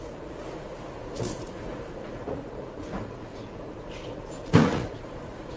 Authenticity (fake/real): fake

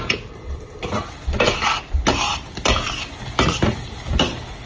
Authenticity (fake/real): real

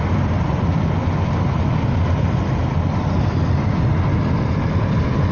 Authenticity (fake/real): real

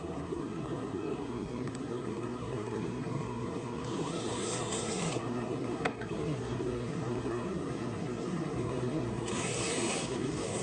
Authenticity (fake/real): fake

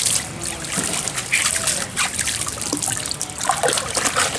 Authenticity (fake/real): real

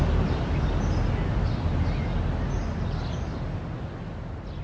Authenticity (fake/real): real